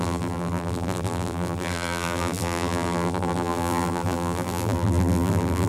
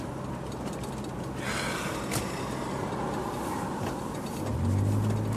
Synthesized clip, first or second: first